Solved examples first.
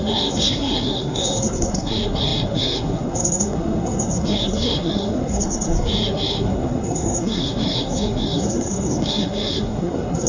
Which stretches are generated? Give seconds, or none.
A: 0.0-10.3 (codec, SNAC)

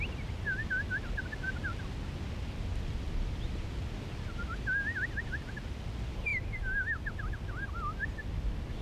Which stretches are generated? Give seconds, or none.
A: none

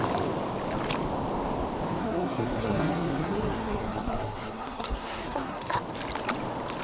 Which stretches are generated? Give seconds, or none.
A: 2.0-5.8 (codec, SNAC)

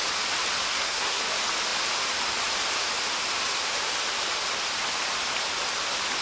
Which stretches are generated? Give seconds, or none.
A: 0.7-1.2 (codec, SNAC)

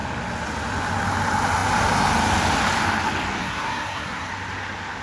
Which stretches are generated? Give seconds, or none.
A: 3.4-4.3 (codec, SNAC)

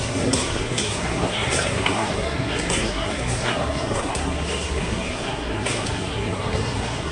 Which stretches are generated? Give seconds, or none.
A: 0.0-7.1 (codec, SNAC)

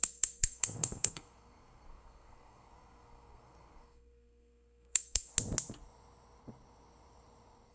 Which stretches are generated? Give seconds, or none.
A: 0.0-5.3 (codec, SNAC)

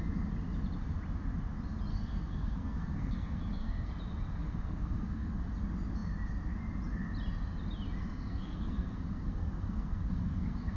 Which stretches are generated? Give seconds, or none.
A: 1.9-3.9 (codec, SNAC); 4.4-5.5; 8.0-10.8